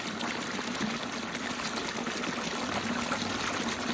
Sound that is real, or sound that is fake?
real